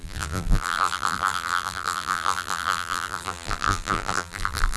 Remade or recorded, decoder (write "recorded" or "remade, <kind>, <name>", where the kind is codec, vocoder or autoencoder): remade, vocoder, BigVGAN v2